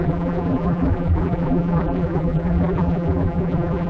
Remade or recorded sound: remade